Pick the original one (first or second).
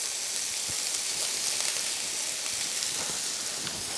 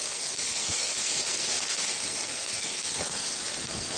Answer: first